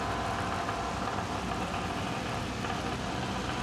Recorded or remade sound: recorded